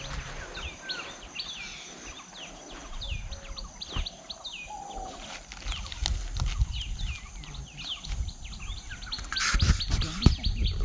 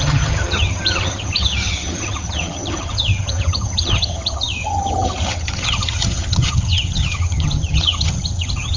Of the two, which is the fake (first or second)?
second